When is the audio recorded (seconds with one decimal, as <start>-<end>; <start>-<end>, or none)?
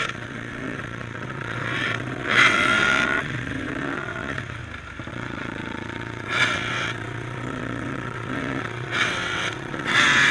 4.6-5.1